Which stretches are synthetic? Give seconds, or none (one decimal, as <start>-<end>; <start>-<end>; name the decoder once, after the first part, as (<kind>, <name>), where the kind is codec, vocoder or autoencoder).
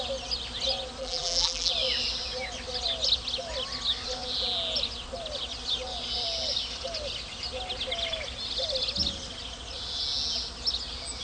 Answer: 1.0-1.7 (vocoder, BigVGAN v2)